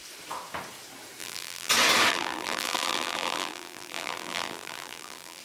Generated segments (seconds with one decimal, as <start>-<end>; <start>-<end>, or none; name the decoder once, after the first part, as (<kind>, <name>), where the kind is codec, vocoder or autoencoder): 1.2-1.7 (vocoder, BigVGAN v2); 2.1-5.4